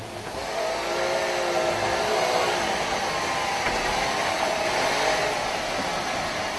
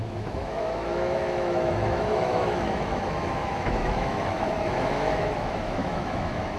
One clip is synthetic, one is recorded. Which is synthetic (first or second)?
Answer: second